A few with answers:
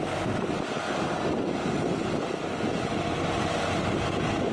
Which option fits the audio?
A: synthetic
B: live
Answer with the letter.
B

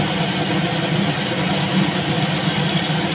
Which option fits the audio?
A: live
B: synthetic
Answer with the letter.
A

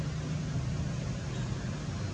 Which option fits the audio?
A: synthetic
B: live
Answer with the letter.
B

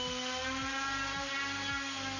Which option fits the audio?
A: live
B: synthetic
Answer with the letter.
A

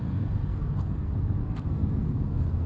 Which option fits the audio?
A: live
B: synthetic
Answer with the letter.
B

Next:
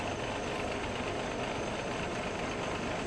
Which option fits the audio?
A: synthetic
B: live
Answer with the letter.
B